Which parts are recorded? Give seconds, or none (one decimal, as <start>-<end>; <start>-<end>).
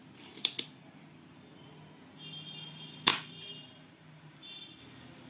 0.0-3.1; 4.8-5.3